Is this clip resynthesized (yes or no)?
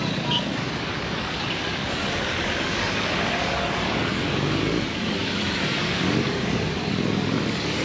yes